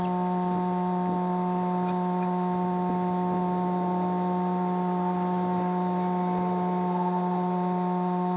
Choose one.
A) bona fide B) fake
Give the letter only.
A